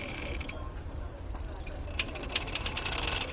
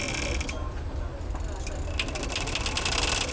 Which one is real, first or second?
second